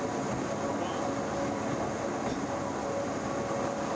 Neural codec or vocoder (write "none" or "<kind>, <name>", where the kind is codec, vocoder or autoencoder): none